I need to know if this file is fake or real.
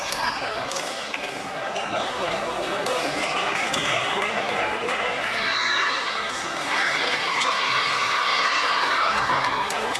fake